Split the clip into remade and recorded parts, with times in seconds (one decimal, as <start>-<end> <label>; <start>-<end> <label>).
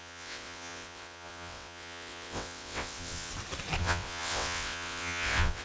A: 0.0-3.3 remade; 3.3-3.8 recorded; 3.8-5.6 remade